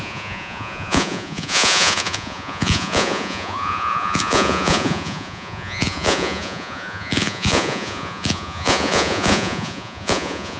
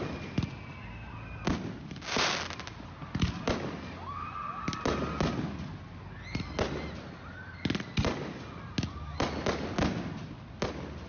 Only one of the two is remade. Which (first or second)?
first